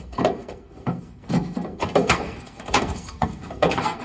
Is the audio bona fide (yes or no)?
no